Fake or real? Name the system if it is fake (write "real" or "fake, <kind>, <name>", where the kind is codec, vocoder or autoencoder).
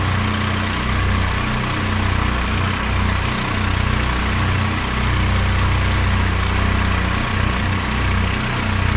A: real